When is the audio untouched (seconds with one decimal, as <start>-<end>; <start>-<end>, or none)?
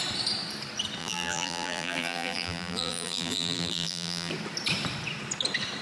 0.0-1.0; 4.3-5.8